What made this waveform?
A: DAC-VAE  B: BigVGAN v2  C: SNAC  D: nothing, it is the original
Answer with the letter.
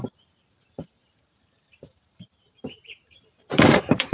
B